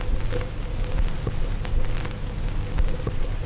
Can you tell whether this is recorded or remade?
recorded